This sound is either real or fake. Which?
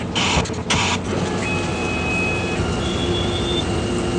real